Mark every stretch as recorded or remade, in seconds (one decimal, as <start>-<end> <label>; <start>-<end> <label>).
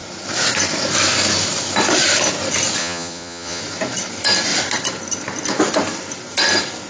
0.0-2.8 recorded; 2.8-3.6 remade; 3.6-6.9 recorded